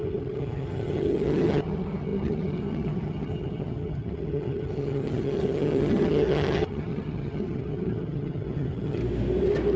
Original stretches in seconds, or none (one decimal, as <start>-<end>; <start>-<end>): 9.0-9.8